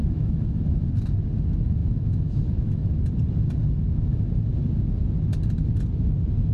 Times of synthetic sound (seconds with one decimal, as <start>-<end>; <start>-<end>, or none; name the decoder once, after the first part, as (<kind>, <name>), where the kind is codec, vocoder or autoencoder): 0.0-0.9 (autoencoder, DAC-VAE); 1.8-2.9